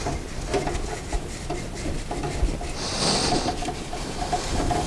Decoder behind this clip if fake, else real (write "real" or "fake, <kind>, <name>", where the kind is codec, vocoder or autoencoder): real